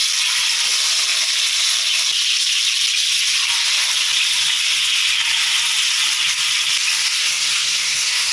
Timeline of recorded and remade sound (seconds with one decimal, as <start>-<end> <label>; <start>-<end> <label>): 0.0-7.2 recorded; 7.2-8.3 remade